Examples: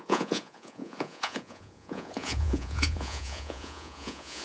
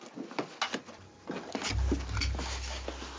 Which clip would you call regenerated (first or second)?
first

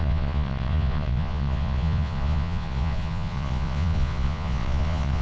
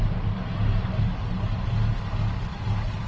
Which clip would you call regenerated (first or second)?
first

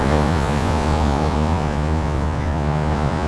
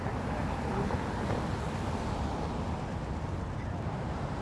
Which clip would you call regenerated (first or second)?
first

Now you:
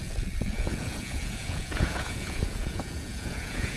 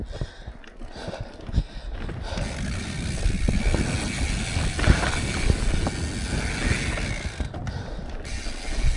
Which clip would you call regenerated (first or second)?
first